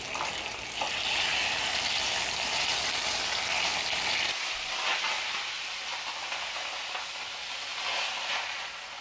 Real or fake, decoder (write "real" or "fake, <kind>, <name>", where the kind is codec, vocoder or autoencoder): real